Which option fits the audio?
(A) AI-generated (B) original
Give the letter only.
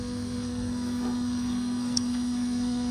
A